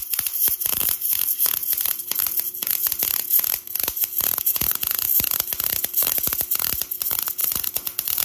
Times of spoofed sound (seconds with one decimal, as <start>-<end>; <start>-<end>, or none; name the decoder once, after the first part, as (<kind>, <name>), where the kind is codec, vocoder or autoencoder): none